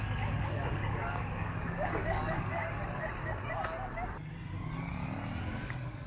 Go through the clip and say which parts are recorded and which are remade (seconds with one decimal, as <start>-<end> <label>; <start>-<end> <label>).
0.0-2.6 remade; 2.6-5.4 recorded; 5.4-6.1 remade